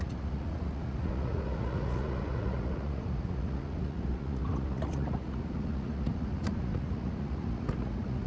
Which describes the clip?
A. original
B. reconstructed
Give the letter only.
B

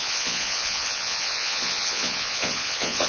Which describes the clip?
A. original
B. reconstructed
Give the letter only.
B